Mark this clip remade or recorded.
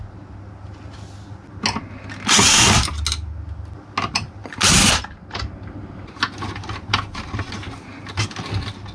recorded